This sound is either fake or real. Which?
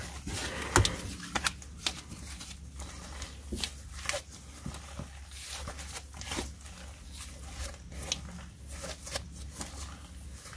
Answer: real